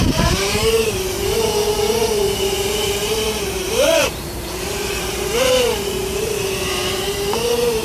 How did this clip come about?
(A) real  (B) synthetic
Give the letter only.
B